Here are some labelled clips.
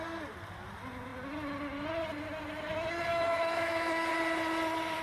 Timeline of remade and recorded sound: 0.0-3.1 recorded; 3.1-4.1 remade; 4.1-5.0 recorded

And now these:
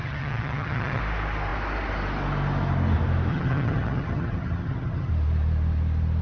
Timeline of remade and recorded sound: 0.0-1.0 remade; 1.0-3.3 recorded; 3.3-5.1 remade; 5.1-6.2 recorded

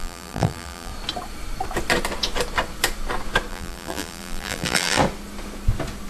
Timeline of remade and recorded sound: 0.0-0.9 remade; 0.9-3.5 recorded; 3.5-5.0 remade; 5.0-6.1 recorded

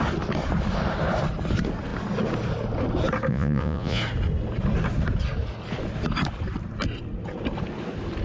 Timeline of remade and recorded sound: 0.0-3.3 recorded; 3.3-4.0 remade; 4.0-8.2 recorded